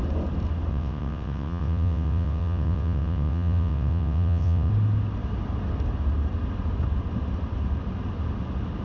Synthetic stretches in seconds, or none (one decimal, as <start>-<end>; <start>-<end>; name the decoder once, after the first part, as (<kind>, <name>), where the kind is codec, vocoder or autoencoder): 0.7-4.7 (vocoder, WaveNeXt)